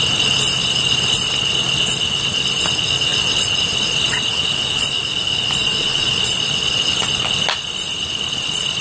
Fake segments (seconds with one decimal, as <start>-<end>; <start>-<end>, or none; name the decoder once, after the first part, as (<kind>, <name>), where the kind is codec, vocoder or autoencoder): 5.6-6.1 (vocoder, Vocos)